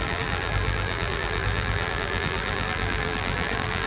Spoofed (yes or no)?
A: yes